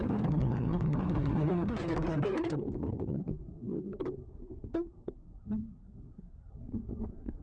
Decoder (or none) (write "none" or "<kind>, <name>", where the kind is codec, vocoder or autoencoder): codec, SNAC